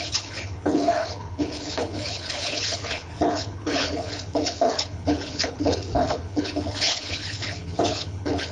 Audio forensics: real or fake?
fake